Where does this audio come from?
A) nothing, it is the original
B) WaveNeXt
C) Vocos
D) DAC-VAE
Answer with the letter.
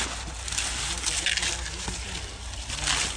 A